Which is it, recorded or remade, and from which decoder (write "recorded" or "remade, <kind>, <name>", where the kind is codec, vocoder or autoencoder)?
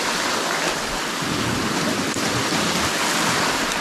recorded